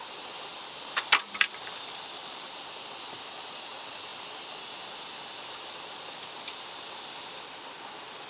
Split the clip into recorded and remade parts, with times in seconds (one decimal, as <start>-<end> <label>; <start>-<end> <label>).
0.0-0.5 remade; 0.5-1.2 recorded; 1.2-4.1 remade; 4.1-5.4 recorded; 5.4-8.3 remade